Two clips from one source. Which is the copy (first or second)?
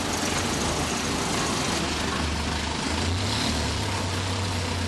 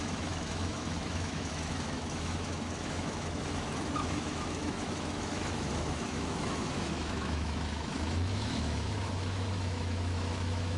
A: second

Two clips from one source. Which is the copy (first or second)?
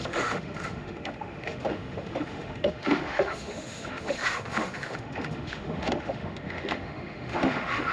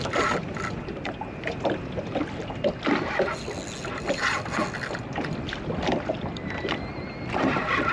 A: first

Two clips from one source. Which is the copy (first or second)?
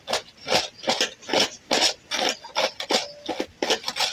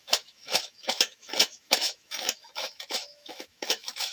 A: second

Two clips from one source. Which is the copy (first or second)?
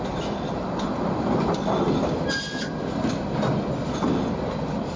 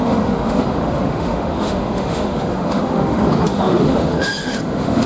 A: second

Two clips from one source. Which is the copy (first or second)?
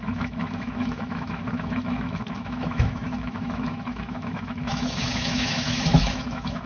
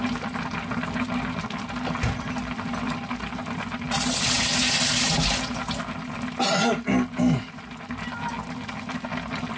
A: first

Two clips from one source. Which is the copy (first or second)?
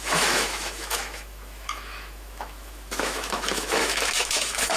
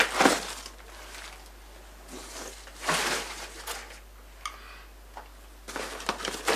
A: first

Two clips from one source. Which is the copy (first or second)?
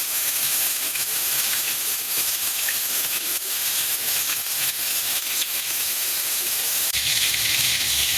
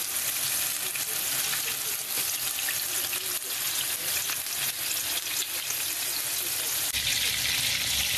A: first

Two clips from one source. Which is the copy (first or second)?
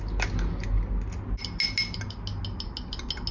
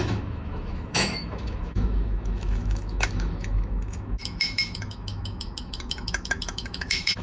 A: second